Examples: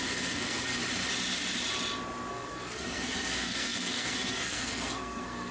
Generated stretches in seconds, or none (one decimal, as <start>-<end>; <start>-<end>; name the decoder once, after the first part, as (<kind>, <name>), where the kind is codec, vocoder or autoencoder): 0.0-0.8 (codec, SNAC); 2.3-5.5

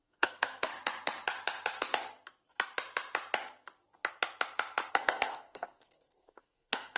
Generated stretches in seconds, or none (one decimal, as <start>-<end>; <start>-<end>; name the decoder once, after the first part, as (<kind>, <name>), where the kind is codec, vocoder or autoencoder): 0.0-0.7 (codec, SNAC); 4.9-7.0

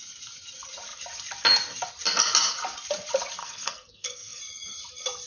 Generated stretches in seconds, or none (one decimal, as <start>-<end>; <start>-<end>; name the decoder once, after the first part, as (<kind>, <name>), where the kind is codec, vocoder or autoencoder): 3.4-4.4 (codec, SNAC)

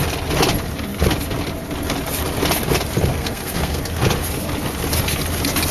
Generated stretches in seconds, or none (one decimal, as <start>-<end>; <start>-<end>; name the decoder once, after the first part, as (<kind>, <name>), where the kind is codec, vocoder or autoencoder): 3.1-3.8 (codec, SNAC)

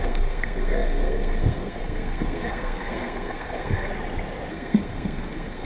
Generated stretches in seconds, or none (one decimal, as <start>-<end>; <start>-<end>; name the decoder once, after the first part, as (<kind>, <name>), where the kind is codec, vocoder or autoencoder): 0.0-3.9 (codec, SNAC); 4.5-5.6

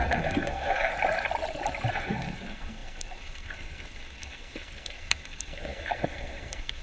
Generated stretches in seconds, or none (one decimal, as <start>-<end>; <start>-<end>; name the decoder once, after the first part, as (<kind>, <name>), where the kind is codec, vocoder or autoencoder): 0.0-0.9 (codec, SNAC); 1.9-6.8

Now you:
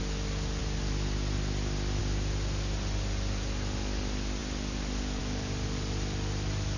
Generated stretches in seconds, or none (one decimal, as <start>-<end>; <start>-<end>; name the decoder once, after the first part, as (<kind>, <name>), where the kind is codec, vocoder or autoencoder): none

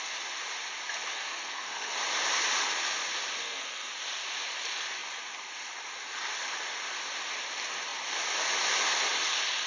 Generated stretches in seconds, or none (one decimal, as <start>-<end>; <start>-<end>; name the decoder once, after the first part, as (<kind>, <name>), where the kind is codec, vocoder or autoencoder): 1.1-1.9 (codec, SNAC); 3.4-3.9